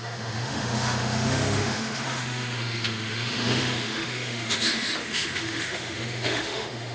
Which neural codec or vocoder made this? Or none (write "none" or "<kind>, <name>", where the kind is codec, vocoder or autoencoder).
autoencoder, DAC-VAE